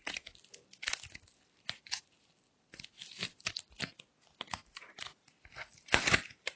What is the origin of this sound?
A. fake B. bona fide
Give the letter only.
B